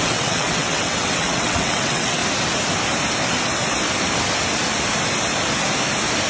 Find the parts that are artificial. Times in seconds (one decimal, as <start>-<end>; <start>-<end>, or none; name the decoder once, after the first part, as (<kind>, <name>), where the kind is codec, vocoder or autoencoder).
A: 0.0-2.2 (vocoder, WaveNeXt)